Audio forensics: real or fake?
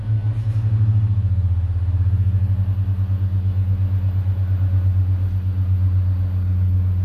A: real